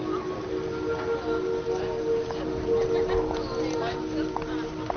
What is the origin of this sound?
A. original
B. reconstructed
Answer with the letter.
A